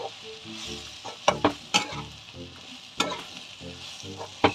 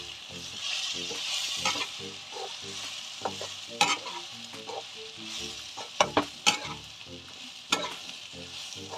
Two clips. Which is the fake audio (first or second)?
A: second